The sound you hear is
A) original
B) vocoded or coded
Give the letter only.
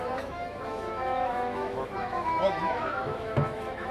B